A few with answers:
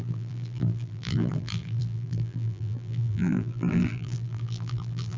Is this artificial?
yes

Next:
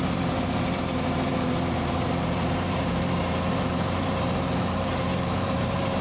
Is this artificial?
yes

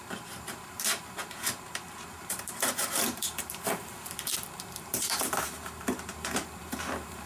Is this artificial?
yes